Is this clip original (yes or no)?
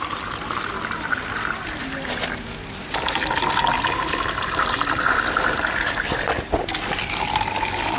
yes